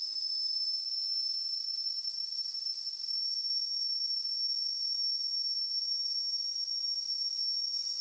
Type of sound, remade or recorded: recorded